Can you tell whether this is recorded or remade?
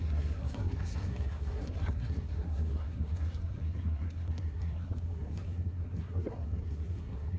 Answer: remade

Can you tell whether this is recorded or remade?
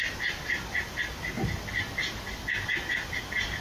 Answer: recorded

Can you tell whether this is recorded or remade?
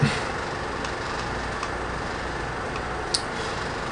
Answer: recorded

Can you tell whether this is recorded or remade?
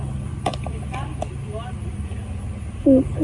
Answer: recorded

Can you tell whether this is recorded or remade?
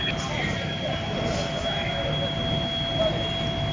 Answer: recorded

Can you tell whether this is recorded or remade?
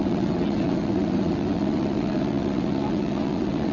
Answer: remade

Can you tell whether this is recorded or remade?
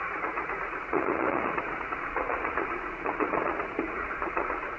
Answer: remade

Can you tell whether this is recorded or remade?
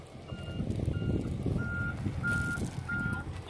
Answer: recorded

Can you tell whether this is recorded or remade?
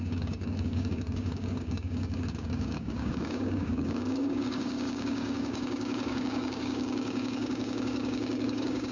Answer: remade